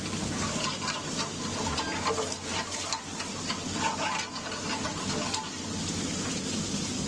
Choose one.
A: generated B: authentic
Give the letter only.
B